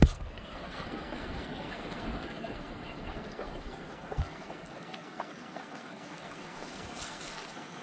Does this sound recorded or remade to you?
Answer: remade